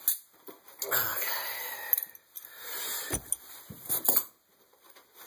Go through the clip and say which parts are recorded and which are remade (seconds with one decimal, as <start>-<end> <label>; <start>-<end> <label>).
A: 0.0-5.3 recorded